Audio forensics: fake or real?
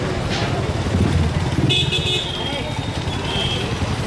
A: real